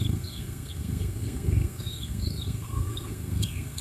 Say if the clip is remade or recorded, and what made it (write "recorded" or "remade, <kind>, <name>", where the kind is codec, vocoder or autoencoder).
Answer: remade, codec, SNAC